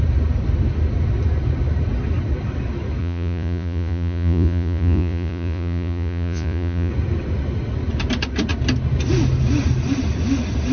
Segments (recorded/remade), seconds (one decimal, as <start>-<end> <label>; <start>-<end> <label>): 0.0-3.0 recorded; 3.0-6.9 remade; 6.9-10.7 recorded